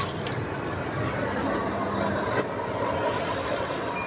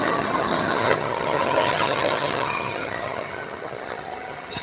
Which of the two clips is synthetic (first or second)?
second